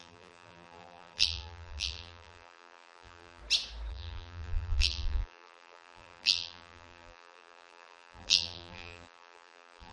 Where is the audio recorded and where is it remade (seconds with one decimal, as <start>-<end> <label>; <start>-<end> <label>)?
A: 0.0-3.4 remade; 3.4-3.9 recorded; 3.9-9.9 remade